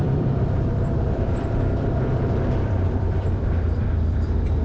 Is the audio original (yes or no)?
no